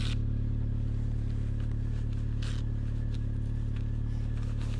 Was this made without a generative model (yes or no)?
yes